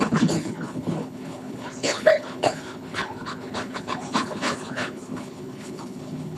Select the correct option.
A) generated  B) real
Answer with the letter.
A